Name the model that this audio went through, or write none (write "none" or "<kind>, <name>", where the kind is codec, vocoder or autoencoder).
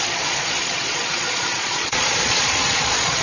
vocoder, Vocos